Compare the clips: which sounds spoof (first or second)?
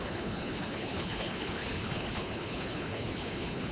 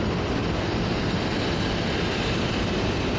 first